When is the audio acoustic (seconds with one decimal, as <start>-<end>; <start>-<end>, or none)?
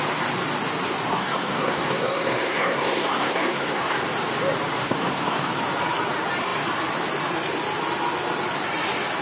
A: 0.0-1.1; 4.0-4.8; 5.5-9.2